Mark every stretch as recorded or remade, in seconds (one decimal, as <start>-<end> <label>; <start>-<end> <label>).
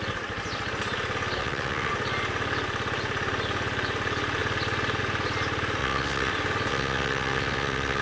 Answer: 0.0-1.4 recorded; 1.4-1.9 remade; 1.9-5.8 recorded; 5.8-6.3 remade; 6.3-6.7 recorded; 6.7-8.0 remade